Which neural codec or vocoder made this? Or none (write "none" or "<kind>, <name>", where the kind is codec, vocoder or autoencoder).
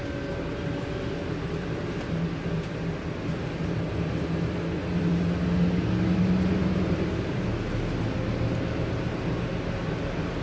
none